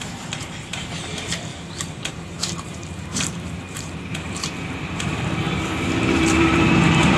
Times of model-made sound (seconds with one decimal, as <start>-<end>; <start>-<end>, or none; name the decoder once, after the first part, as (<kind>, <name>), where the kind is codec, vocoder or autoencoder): 0.0-7.2 (vocoder, BigVGAN v2)